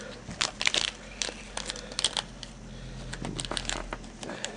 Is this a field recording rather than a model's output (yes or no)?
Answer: yes